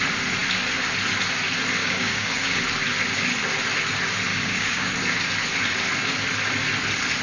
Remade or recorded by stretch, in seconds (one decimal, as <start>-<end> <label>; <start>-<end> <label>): 0.0-1.8 recorded; 1.8-2.6 remade; 2.6-4.3 recorded; 4.3-4.9 remade; 4.9-7.2 recorded